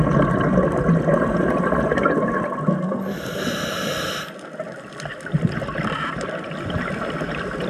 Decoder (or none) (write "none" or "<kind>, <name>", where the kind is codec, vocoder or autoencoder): none